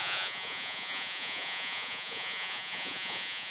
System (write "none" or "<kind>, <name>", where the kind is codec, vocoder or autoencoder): vocoder, Vocos